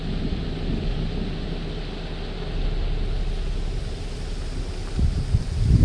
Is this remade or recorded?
recorded